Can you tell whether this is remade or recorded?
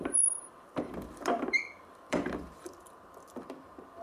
remade